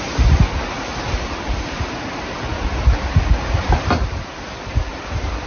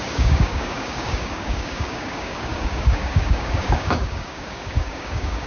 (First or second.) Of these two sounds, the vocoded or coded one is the second